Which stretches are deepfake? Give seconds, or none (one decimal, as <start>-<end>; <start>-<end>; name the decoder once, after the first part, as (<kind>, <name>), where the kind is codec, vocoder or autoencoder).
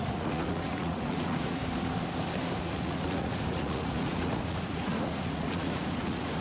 0.0-1.6 (vocoder, Vocos); 2.6-6.4